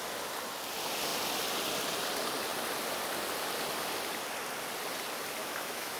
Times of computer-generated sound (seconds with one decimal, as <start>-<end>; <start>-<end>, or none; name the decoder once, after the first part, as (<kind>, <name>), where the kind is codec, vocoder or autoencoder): 5.4-6.0 (autoencoder, DAC-VAE)